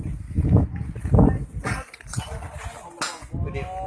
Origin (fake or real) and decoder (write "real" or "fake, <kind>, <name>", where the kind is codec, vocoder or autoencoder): real